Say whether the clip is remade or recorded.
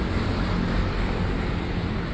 recorded